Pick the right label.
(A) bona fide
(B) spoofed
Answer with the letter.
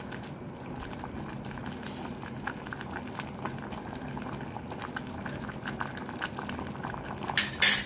A